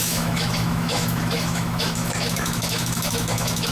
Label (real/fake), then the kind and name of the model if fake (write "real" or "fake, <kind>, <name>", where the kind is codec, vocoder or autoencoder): fake, autoencoder, DAC-VAE